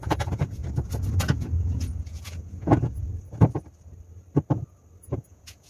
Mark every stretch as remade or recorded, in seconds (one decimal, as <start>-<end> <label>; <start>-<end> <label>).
0.0-0.6 remade; 0.6-1.2 recorded; 1.2-3.0 remade; 3.0-5.0 recorded; 5.0-5.7 remade